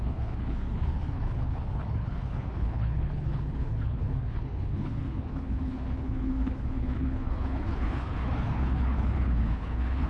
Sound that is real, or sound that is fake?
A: fake